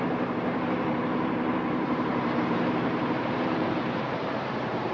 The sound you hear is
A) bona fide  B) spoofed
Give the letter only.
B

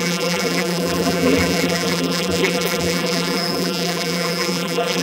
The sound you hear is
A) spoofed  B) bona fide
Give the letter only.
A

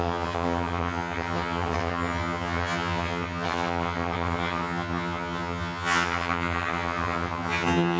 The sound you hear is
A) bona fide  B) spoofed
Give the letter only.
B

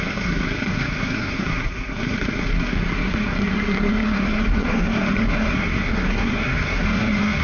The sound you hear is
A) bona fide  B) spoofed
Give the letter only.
B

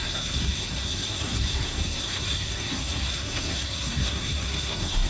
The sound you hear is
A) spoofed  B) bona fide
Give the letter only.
A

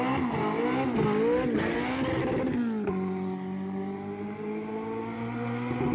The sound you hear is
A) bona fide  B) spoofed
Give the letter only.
A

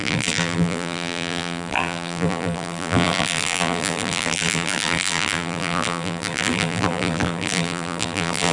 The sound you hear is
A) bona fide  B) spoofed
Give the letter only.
B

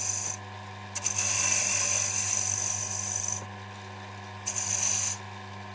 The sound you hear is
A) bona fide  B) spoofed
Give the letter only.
A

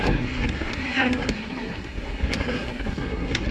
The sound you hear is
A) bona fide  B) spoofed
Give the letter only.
B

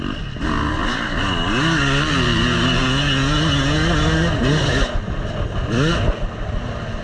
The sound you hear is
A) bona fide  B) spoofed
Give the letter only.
A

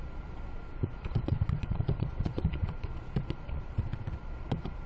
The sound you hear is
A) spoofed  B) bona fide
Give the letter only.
A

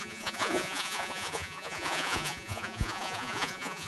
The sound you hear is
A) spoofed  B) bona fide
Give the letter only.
A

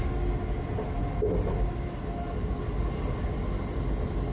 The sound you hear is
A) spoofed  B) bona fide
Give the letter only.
B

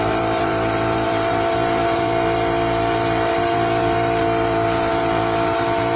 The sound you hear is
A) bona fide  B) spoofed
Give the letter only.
B